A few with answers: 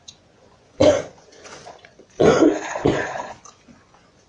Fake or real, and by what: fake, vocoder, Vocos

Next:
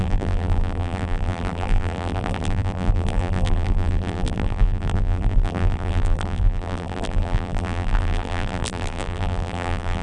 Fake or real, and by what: fake, vocoder, BigVGAN v2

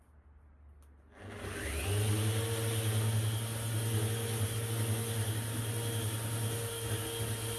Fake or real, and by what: real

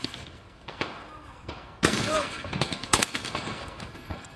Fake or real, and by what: fake, codec, SNAC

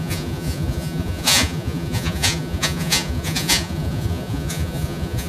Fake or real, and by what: fake, vocoder, Vocos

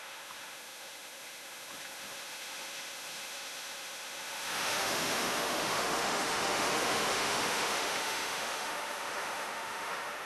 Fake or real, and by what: fake, autoencoder, DAC-VAE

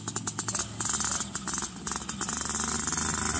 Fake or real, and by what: real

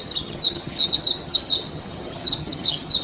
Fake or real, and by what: fake, vocoder, HiFi-GAN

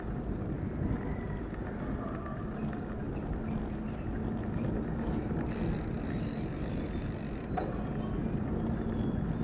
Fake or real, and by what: real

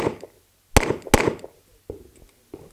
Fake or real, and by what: real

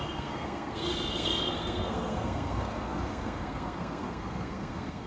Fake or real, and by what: fake, codec, SNAC